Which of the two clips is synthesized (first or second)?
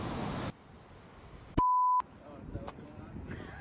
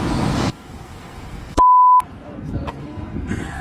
second